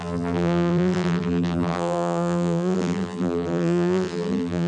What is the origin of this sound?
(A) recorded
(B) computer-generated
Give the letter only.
B